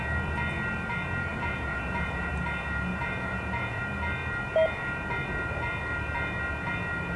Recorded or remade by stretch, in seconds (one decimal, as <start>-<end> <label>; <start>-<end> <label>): 0.0-1.3 recorded; 1.3-2.3 remade; 2.3-2.9 recorded; 2.9-3.8 remade; 3.8-7.2 recorded